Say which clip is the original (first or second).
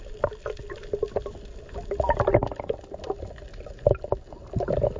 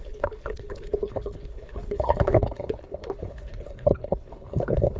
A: first